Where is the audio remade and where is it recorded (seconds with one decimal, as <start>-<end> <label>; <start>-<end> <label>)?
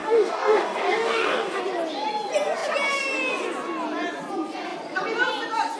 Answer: 0.0-1.6 remade; 1.6-5.8 recorded